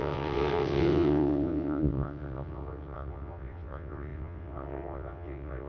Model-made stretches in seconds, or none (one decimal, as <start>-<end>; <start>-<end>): 0.0-5.7